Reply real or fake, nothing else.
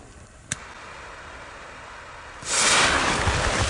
fake